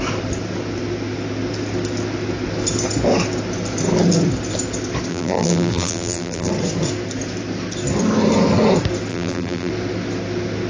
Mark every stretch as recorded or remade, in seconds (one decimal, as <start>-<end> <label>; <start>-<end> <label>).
0.0-5.1 recorded; 5.1-6.5 remade; 6.5-9.1 recorded; 9.1-9.7 remade; 9.7-10.7 recorded